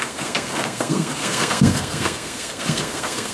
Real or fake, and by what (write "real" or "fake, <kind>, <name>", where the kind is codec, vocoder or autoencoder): fake, codec, SNAC